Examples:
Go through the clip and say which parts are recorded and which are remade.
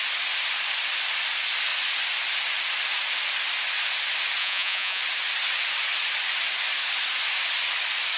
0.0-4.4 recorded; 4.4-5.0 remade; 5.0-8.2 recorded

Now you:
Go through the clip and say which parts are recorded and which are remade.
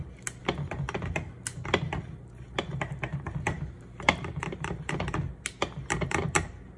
0.0-3.1 recorded; 3.1-5.0 remade; 5.0-6.8 recorded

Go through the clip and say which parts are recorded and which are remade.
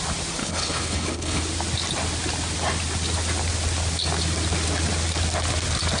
0.0-0.4 recorded; 0.4-1.4 remade; 1.4-6.0 recorded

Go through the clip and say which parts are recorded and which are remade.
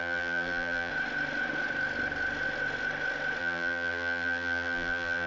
0.0-0.9 remade; 0.9-3.4 recorded; 3.4-5.3 remade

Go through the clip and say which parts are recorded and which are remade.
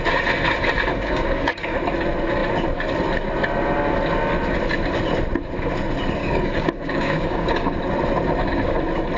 0.0-0.9 recorded; 0.9-1.8 remade; 1.8-6.2 recorded; 6.2-7.8 remade; 7.8-9.2 recorded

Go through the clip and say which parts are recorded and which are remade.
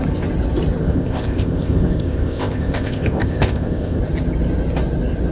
0.0-0.8 recorded; 0.8-4.0 remade; 4.0-5.3 recorded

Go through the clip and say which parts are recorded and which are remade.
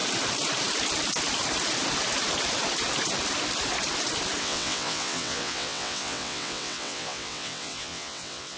0.0-4.4 recorded; 4.4-8.6 remade